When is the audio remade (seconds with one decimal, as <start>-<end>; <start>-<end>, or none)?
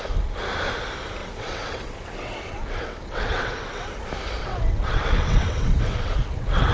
1.2-3.9; 4.4-6.7